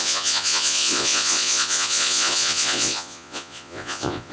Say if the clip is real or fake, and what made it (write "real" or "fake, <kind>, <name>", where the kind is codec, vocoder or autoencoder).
fake, vocoder, Vocos